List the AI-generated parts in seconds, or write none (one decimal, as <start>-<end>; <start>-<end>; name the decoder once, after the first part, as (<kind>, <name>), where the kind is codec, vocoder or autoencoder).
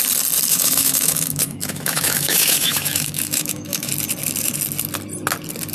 0.5-3.9 (autoencoder, DAC-VAE)